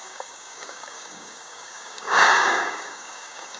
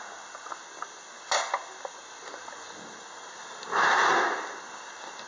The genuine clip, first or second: second